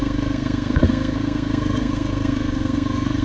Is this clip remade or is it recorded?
remade